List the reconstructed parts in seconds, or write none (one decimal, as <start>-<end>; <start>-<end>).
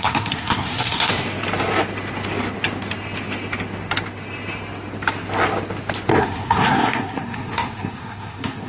0.0-1.1; 6.2-8.7